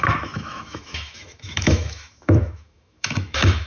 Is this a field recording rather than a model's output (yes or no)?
no